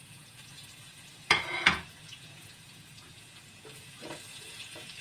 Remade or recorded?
remade